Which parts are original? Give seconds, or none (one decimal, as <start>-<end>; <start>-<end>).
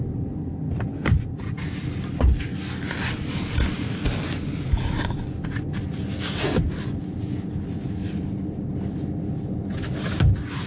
0.0-10.7